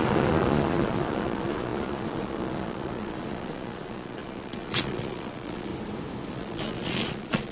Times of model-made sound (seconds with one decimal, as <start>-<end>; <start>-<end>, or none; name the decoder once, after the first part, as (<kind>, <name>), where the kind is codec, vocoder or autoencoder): 0.0-5.7 (vocoder, Vocos); 6.3-7.5